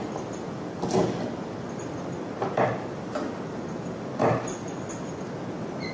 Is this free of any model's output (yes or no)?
yes